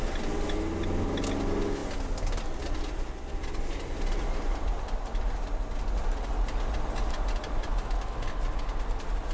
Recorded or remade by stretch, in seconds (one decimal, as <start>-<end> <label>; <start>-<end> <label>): 0.0-9.3 recorded